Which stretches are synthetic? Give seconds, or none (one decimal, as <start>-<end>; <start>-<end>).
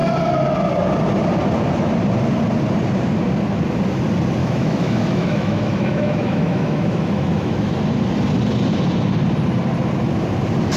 4.4-7.7